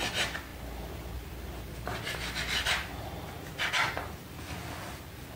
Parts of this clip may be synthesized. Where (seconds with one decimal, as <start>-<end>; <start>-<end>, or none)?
0.5-3.7